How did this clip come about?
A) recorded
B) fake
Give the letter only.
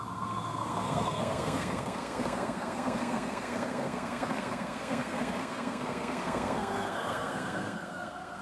B